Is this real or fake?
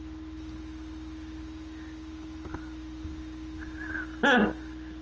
real